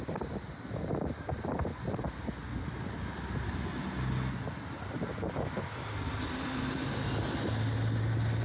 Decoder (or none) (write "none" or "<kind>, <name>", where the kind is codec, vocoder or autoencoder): none